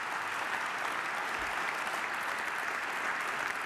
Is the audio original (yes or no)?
yes